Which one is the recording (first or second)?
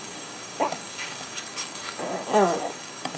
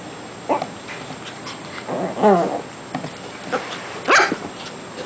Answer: second